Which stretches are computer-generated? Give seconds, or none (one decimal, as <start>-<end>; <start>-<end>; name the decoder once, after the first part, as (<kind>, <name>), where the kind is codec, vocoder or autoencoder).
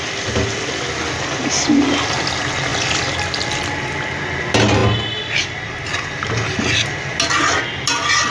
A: none